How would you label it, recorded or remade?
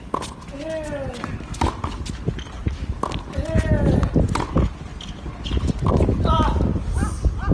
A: recorded